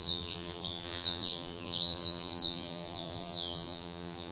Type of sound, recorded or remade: remade